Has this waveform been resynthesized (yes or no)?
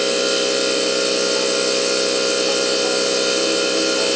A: no